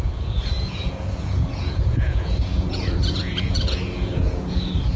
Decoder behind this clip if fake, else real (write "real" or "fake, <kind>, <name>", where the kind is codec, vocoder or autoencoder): fake, vocoder, Vocos